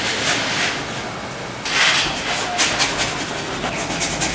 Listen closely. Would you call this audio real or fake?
real